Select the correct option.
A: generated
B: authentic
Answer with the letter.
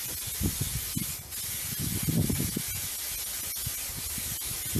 B